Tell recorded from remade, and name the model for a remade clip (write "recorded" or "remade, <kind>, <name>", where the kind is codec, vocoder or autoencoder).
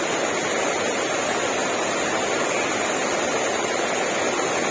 recorded